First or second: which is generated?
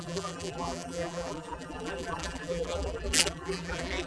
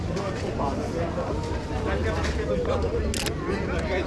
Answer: first